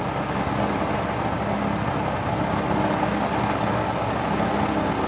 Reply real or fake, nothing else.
real